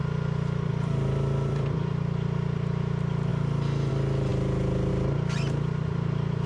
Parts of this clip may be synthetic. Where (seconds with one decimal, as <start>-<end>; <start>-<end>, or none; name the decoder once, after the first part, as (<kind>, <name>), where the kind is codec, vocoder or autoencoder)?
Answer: 0.0-3.3 (vocoder, BigVGAN v2); 3.9-6.5